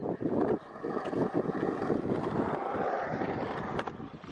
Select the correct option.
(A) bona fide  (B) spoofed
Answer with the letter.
A